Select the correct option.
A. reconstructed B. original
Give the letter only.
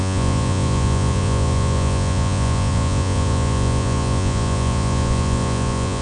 A